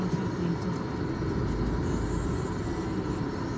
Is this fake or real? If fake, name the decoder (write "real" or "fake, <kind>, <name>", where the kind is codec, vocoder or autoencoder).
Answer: real